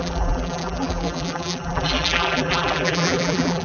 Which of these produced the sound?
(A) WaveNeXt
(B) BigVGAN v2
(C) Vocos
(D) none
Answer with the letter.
B